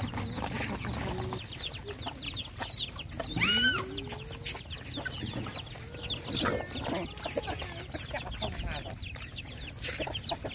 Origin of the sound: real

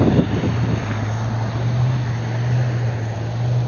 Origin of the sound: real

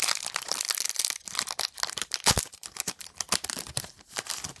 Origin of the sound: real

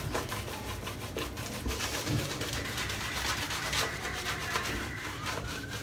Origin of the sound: fake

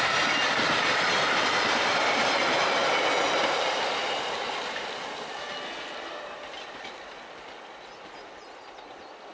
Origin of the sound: real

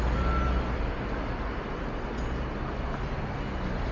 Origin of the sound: real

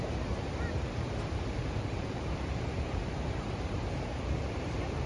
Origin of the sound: fake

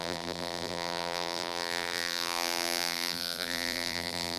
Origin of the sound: fake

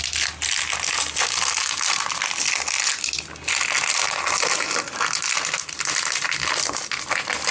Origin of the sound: real